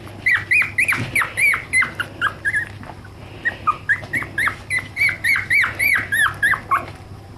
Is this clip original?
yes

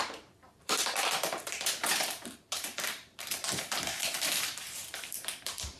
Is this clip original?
no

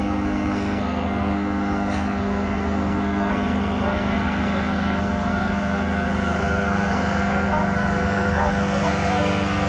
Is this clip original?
no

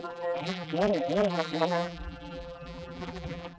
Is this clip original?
no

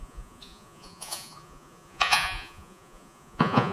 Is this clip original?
no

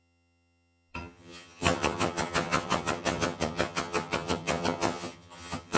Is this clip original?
no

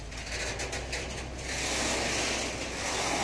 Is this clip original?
yes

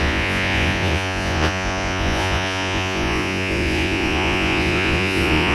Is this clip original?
no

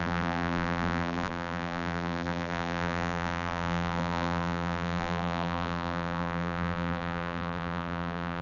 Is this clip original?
no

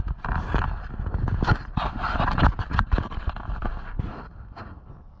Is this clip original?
yes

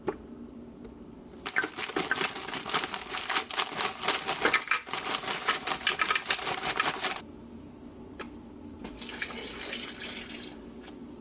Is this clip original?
yes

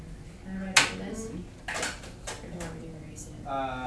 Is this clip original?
yes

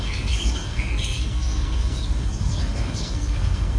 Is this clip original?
no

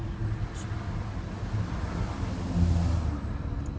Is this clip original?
yes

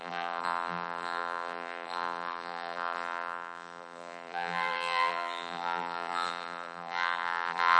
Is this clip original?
no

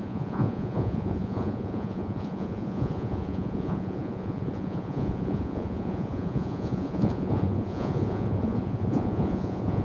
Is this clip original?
no